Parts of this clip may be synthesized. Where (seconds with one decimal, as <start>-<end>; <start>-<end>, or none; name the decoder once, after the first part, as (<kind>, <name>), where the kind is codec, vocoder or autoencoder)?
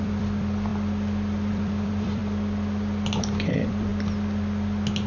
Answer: 0.0-0.7 (vocoder, BigVGAN v2); 1.5-2.2; 3.2-3.9